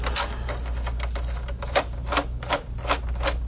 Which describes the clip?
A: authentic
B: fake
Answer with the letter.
A